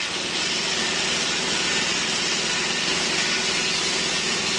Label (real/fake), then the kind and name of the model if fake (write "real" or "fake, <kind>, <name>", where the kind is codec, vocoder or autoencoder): real